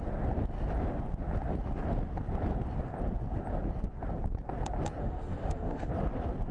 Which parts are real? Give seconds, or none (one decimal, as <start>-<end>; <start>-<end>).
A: 0.0-5.0; 5.9-6.5